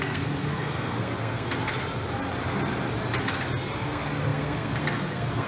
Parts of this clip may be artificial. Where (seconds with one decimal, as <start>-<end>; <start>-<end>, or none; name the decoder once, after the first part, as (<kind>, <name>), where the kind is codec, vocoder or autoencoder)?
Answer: 0.0-1.6 (codec, SNAC); 3.8-5.5